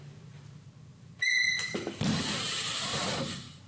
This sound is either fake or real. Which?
fake